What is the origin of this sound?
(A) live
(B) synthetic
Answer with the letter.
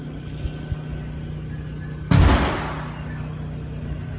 A